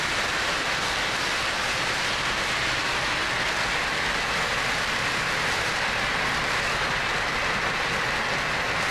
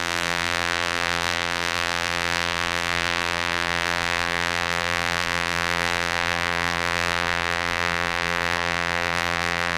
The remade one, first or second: second